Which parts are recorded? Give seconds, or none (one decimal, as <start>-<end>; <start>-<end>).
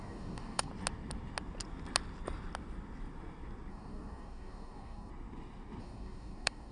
0.7-3.7; 5.1-5.8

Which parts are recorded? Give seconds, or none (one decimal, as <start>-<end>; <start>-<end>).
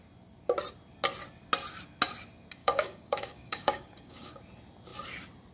0.0-2.6; 4.4-5.5